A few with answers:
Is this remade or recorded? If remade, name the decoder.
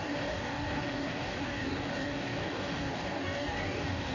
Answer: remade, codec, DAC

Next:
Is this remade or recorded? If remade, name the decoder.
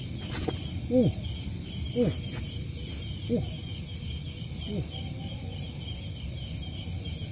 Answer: recorded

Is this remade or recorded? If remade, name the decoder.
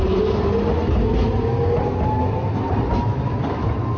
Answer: recorded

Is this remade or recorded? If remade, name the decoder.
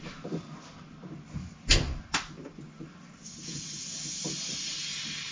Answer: recorded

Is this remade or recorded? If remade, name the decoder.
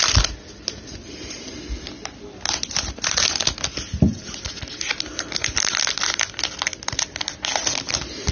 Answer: recorded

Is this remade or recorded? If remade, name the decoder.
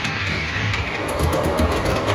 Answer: remade, codec, DAC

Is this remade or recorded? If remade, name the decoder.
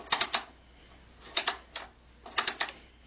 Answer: recorded